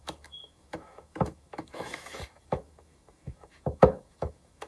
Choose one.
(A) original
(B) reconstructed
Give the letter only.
B